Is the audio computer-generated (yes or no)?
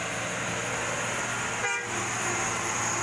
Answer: no